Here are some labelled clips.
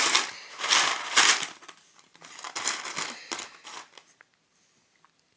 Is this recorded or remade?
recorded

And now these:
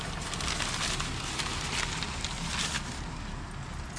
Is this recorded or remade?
recorded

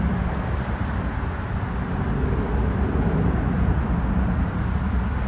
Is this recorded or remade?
recorded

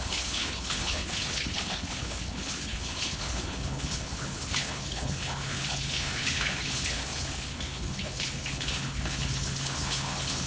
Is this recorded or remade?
remade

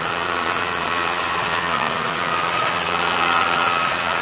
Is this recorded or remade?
remade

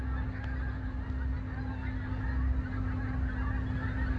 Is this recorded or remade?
recorded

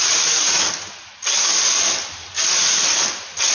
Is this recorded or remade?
recorded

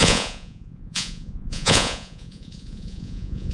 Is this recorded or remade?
remade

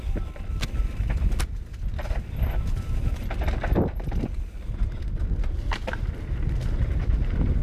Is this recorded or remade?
recorded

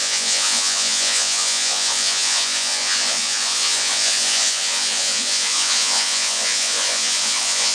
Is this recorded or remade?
remade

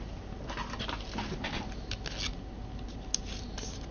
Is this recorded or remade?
recorded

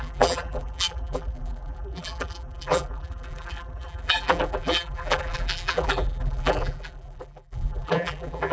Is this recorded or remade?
remade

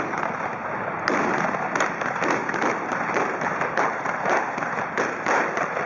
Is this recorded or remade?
recorded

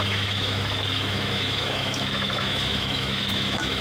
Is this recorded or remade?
remade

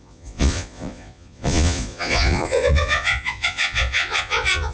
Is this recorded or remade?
remade